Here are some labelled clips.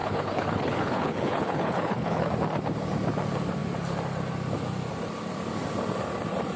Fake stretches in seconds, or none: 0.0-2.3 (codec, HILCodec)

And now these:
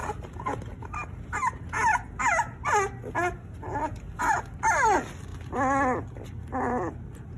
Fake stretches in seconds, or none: none

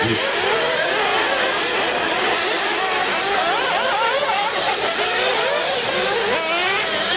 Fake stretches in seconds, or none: none

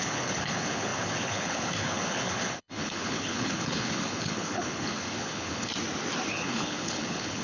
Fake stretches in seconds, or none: 0.0-5.7 (codec, HILCodec); 6.3-7.4

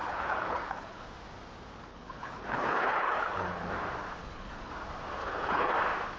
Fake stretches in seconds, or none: 0.0-1.0 (codec, HILCodec); 1.9-3.7; 4.2-4.7; 5.2-5.7

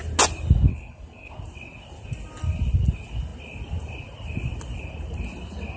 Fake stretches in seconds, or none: 0.7-1.3 (codec, HILCodec)

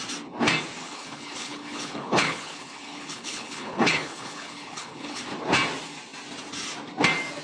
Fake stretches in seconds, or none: 0.8-5.2 (codec, HILCodec)